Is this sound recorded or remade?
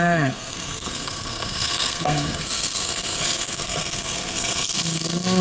remade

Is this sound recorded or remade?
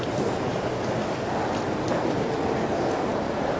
recorded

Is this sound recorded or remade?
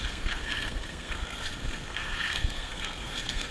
remade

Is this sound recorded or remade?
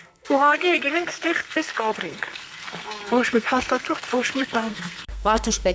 remade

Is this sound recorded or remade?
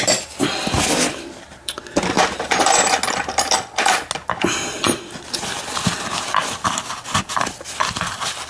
recorded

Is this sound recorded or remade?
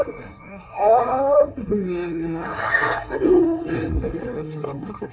remade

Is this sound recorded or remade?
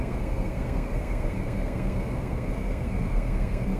remade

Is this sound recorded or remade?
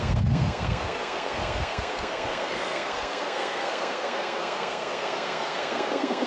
remade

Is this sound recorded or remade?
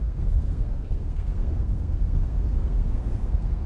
remade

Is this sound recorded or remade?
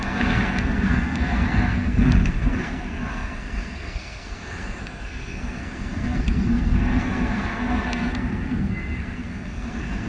remade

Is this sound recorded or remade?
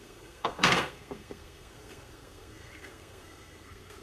remade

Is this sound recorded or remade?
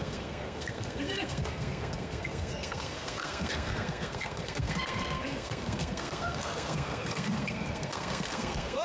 remade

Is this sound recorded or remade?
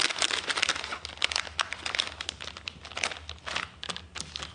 recorded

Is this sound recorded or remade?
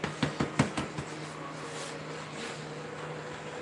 recorded